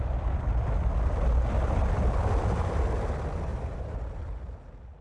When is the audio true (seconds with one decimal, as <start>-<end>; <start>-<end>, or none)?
0.0-3.5; 4.0-5.0